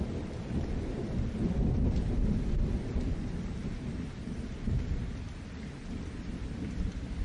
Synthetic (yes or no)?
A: yes